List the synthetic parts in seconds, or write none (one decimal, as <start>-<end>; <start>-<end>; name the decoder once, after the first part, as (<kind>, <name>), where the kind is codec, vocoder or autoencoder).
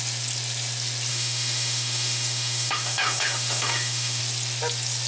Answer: 1.1-4.2 (autoencoder, DAC-VAE)